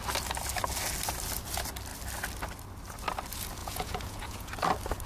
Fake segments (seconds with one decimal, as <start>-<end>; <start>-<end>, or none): 3.6-4.5